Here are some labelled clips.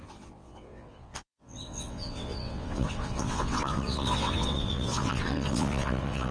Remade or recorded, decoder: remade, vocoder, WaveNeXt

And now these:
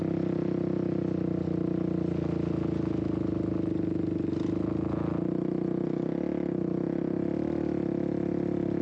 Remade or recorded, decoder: recorded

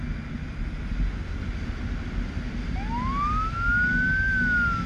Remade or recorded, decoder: recorded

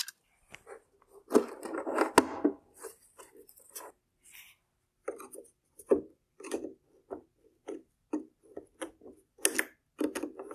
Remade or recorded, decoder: recorded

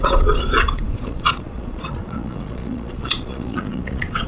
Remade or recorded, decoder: remade, vocoder, Vocos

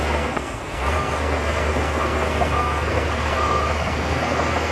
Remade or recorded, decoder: remade, codec, SNAC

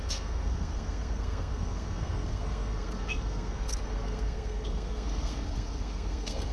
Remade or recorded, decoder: remade, codec, SNAC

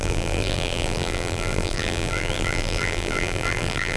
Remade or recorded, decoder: remade, vocoder, BigVGAN v2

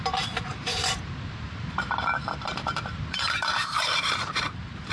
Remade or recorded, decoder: remade, vocoder, BigVGAN v2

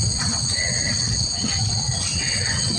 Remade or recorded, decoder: remade, vocoder, WaveNeXt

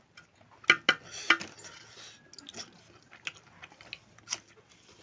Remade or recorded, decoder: recorded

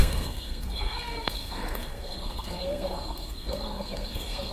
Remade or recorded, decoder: remade, codec, SNAC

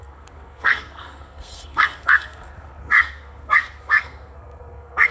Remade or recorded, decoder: remade, codec, SNAC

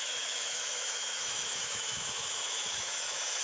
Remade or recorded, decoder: remade, autoencoder, DAC-VAE